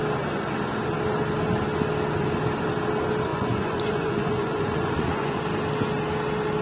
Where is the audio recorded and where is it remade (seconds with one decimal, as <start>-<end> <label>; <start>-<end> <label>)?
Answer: 0.0-3.3 recorded; 3.3-5.4 remade; 5.4-6.6 recorded